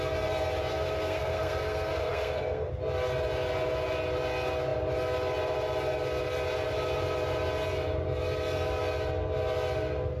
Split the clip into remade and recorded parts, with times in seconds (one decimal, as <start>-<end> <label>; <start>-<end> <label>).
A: 0.0-0.7 recorded; 0.7-2.7 remade; 2.7-10.2 recorded